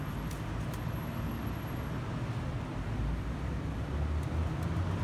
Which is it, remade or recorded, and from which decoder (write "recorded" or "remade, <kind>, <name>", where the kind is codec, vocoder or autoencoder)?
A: recorded